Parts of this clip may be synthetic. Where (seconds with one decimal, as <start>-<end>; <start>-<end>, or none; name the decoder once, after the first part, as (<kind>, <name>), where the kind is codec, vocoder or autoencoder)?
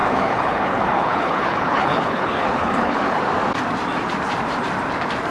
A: 0.0-3.2 (codec, HILCodec)